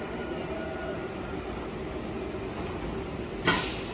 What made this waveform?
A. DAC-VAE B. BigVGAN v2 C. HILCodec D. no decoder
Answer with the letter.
D